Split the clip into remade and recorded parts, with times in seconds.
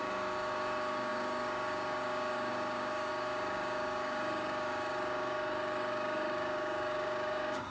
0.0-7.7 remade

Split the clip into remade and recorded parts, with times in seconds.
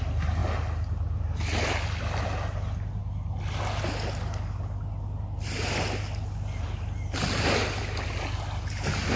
0.0-9.2 recorded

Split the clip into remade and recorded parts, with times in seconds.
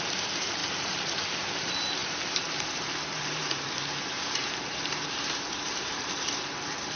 0.0-7.0 remade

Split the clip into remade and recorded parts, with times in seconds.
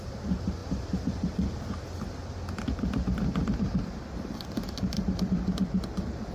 0.0-6.3 recorded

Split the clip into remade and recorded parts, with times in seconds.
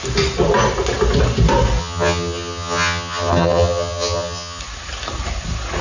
0.0-1.8 recorded; 1.8-4.6 remade; 4.6-5.8 recorded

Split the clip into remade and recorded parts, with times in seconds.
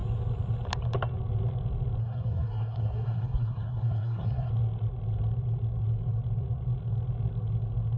0.0-2.0 recorded; 2.0-4.5 remade; 4.5-8.0 recorded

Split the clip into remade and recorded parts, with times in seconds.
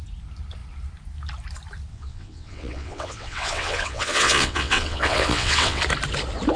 0.0-1.9 recorded; 1.9-5.8 remade; 5.8-6.6 recorded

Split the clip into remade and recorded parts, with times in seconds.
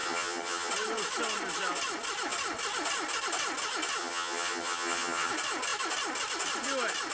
0.0-0.7 remade; 0.7-4.0 recorded; 4.0-5.3 remade; 5.3-7.1 recorded